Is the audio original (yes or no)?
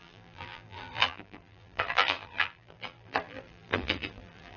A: no